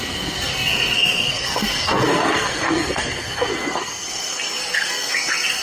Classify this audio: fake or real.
fake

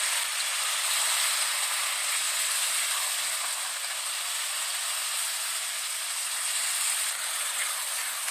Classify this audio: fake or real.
real